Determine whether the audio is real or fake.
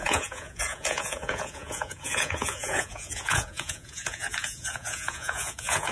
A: fake